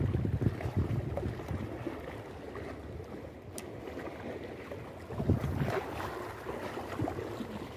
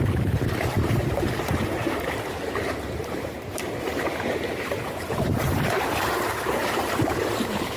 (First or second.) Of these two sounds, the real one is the first